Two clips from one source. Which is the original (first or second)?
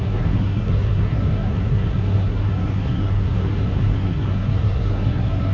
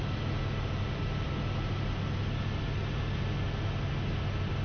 second